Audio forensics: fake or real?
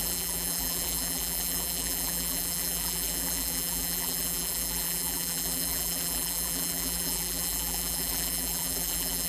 fake